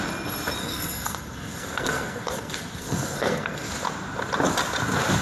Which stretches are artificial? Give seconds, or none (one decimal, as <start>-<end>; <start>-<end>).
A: 0.6-3.7